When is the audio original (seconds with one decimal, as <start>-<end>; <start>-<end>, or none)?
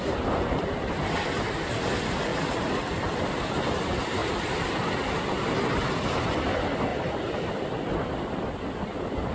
0.0-4.2; 5.6-6.9; 7.5-9.3